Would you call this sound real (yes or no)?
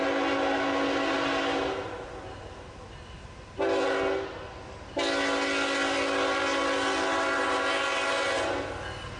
yes